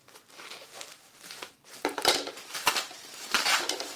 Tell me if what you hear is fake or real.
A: fake